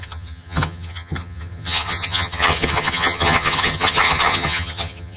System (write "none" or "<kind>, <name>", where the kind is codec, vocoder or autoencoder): vocoder, HiFi-GAN